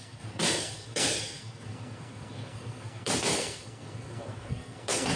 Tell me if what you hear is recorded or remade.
remade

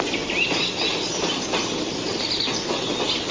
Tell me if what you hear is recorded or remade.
recorded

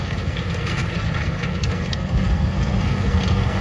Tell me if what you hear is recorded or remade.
remade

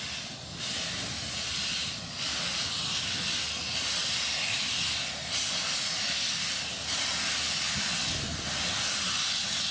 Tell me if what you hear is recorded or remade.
recorded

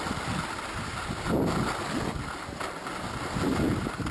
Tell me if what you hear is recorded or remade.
recorded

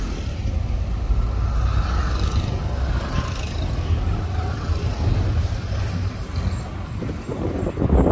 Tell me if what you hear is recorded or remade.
recorded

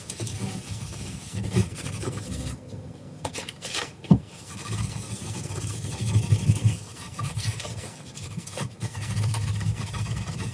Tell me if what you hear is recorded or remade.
remade